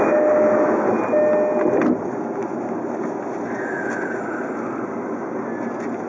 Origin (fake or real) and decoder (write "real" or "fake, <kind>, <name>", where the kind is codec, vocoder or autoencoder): real